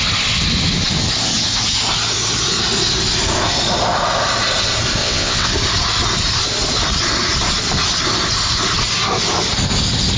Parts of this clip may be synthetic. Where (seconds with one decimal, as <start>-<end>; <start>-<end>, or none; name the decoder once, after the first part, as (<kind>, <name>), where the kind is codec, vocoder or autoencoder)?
5.0-5.5 (vocoder, WaveNeXt)